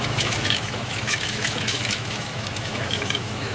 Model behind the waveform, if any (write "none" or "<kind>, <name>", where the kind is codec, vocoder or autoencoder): autoencoder, DAC-VAE